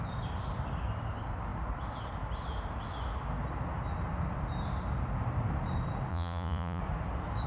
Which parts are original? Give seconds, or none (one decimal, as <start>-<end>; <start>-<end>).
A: 0.0-6.1; 6.8-7.5